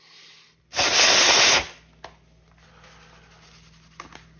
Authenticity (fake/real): real